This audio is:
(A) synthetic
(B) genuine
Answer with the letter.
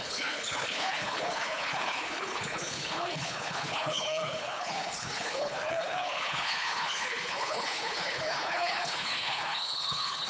A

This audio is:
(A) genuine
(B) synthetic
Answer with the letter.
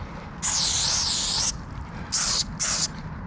A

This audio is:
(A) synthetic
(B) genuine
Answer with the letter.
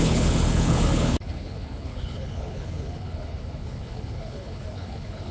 A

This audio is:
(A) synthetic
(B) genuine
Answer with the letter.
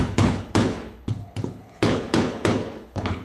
A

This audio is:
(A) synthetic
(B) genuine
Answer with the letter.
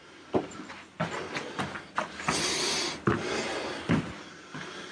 B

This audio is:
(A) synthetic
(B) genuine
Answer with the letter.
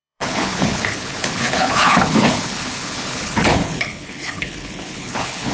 A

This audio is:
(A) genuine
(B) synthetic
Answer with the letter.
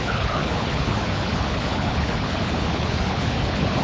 B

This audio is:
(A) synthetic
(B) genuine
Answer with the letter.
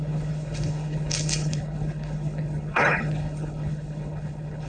A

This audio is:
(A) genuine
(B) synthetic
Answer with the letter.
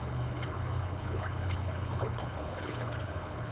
B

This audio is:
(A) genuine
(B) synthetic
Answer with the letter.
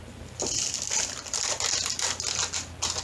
A